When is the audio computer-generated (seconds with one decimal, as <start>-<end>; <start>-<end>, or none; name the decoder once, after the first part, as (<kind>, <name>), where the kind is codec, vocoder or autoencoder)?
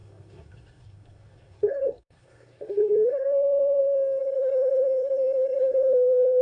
0.0-3.8 (codec, SNAC); 4.2-6.4